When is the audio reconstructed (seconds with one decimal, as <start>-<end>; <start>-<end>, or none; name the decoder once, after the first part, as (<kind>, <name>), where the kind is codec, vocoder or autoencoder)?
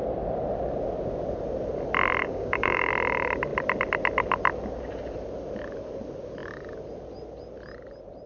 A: 2.2-2.9 (codec, DAC)